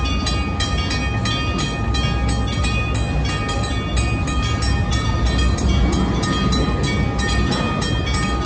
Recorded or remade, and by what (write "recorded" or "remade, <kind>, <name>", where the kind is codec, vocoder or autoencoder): recorded